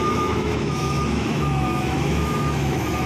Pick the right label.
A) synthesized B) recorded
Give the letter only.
A